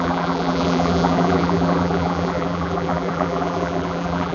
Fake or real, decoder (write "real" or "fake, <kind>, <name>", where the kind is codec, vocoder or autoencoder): fake, vocoder, BigVGAN v2